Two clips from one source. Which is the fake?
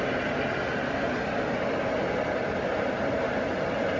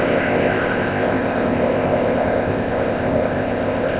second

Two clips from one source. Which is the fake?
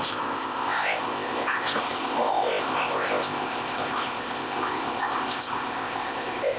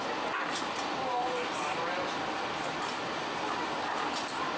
first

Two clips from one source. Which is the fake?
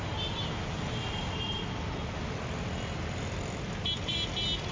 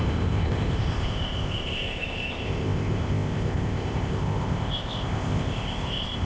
second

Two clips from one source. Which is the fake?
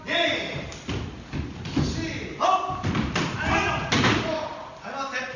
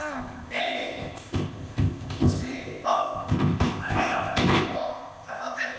second